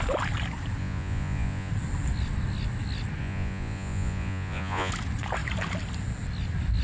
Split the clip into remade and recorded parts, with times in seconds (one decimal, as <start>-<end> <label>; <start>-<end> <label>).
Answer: 0.0-0.8 recorded; 0.8-1.7 remade; 1.7-3.2 recorded; 3.2-4.9 remade; 4.9-6.8 recorded